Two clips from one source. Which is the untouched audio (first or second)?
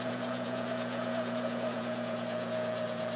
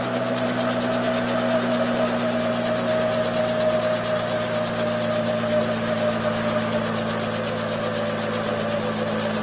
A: second